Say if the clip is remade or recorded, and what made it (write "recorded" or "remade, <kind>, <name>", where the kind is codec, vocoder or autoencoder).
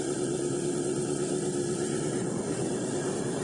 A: recorded